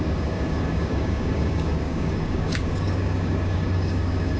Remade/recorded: remade